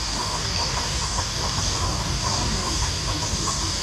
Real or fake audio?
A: fake